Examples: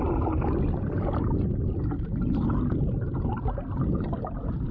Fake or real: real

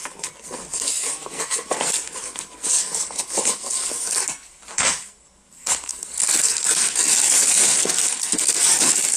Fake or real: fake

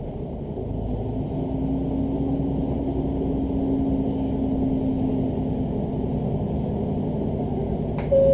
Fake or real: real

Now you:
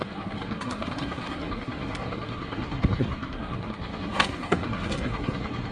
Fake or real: fake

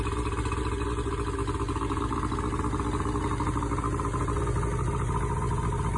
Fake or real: real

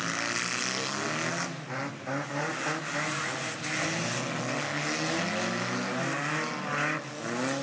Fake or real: real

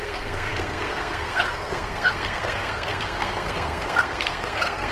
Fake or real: fake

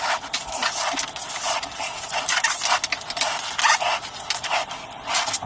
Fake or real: real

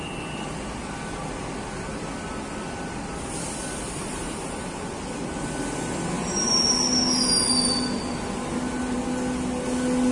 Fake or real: real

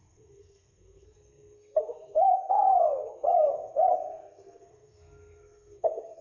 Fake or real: fake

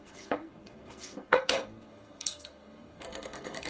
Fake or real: fake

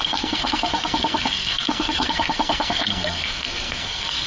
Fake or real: fake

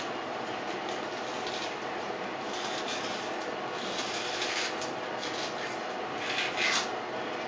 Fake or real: real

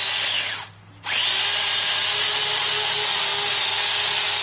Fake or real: real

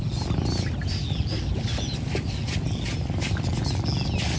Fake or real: real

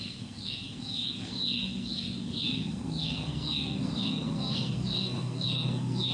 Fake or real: fake